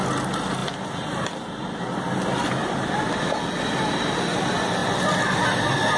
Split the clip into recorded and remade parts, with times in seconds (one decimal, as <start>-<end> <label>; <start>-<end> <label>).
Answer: 0.0-0.6 recorded; 0.6-4.2 remade; 4.2-6.0 recorded